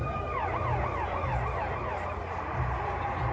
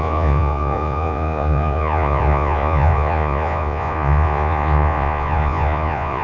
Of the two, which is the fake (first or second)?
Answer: second